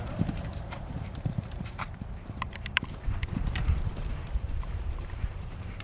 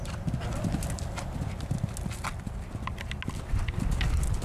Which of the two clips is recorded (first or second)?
second